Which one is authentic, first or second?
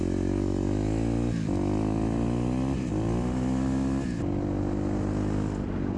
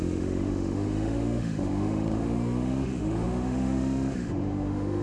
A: first